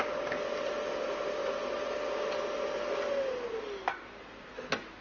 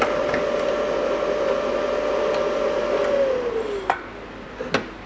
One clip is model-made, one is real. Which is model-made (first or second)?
first